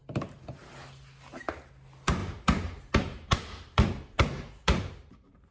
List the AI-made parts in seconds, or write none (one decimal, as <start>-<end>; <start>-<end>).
2.2-5.5